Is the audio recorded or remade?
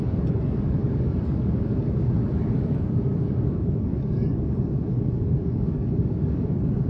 remade